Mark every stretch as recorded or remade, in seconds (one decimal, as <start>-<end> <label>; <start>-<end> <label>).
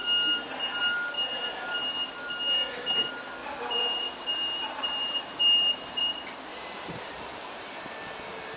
0.0-3.4 recorded; 3.4-6.0 remade; 6.0-6.5 recorded; 6.5-8.6 remade